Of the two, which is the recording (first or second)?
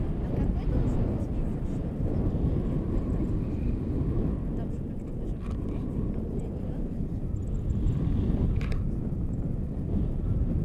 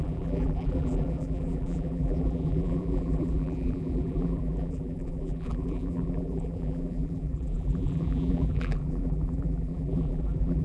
first